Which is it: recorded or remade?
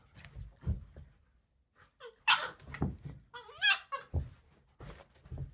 recorded